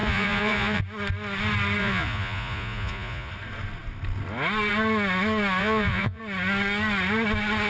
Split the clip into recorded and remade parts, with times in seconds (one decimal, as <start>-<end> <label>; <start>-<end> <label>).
0.0-0.8 remade; 0.8-1.8 recorded; 1.8-3.3 remade; 3.3-5.6 recorded; 5.6-6.2 remade; 6.2-7.7 recorded